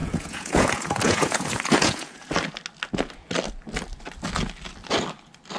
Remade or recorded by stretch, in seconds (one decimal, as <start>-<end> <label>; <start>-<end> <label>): 0.0-2.3 remade; 2.3-5.6 recorded